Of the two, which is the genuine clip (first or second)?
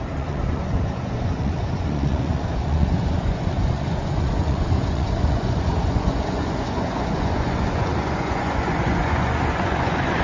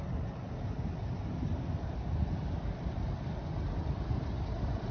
second